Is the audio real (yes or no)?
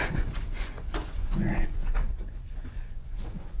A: no